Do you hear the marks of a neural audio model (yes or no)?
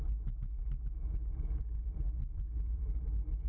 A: no